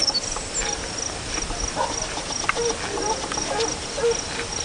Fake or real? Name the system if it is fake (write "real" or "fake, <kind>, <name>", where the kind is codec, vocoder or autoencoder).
real